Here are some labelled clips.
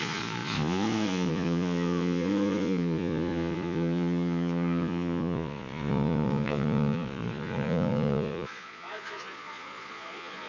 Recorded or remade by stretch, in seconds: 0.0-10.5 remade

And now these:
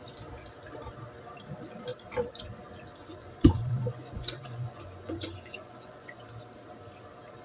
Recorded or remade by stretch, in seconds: 0.0-3.2 recorded; 3.2-6.2 remade; 6.2-7.4 recorded

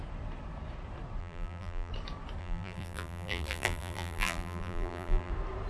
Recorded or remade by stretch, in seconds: 0.0-1.2 recorded; 1.2-1.9 remade; 1.9-2.4 recorded; 2.4-5.3 remade; 5.3-5.7 recorded

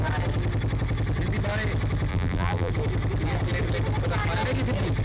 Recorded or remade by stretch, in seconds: 0.0-2.1 recorded; 2.1-2.7 remade; 2.7-5.0 recorded

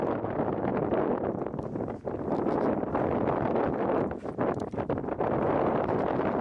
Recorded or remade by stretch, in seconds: 0.0-6.4 recorded